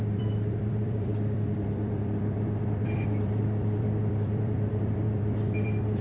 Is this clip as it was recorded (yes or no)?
no